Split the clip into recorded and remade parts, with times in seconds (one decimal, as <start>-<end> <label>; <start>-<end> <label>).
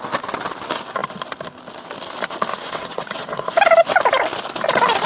0.0-2.5 recorded; 2.5-3.5 remade; 3.5-5.1 recorded